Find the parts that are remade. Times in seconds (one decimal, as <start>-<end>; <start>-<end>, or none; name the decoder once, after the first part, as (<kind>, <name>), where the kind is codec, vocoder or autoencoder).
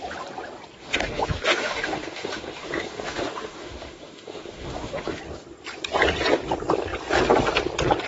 0.8-5.2 (autoencoder, DAC-VAE)